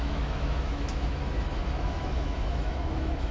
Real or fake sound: fake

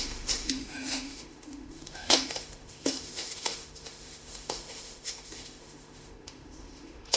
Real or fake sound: fake